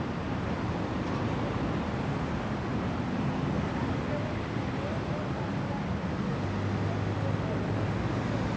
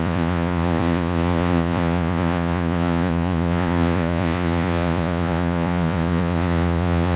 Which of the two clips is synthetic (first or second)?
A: second